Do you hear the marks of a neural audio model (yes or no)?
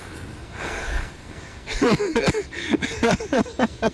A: yes